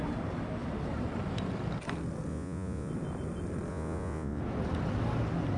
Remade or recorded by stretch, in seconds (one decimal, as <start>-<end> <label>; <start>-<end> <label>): 0.0-2.3 recorded; 2.3-2.9 remade; 2.9-3.7 recorded; 3.7-4.4 remade; 4.4-5.6 recorded